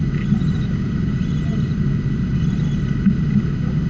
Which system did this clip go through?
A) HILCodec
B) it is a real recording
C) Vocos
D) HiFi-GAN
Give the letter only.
B